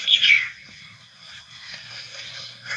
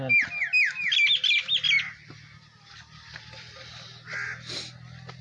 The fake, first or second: first